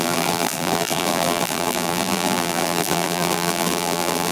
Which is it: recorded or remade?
remade